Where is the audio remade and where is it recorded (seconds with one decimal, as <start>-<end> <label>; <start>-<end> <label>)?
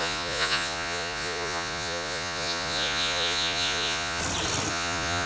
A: 0.0-4.2 remade; 4.2-4.7 recorded; 4.7-5.3 remade